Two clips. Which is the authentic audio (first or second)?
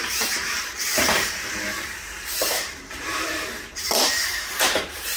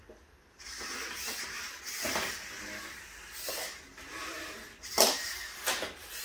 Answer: second